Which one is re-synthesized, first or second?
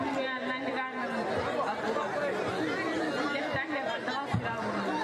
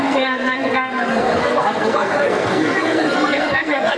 second